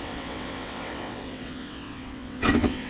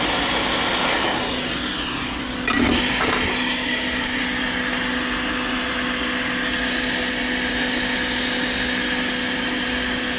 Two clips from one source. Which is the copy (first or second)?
first